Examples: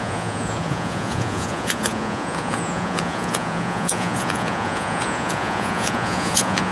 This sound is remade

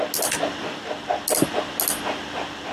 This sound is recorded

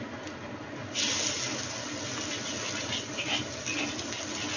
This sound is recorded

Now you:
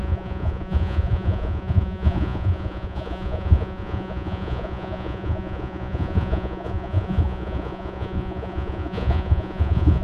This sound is remade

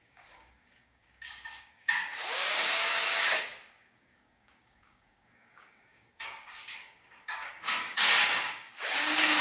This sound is remade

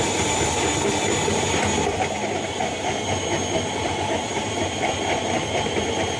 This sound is recorded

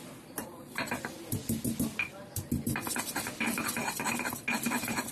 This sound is recorded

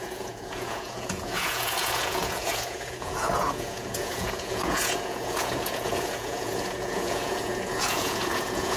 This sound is remade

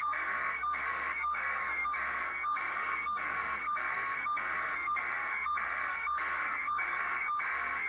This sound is remade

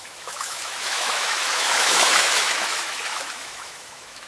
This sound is remade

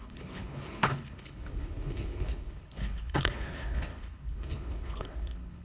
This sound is remade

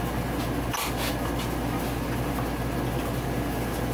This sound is recorded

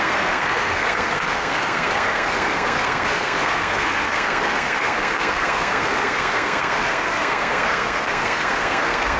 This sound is remade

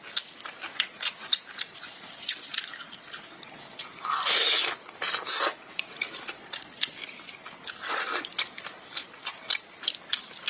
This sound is recorded